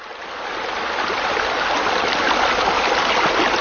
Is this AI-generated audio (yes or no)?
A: no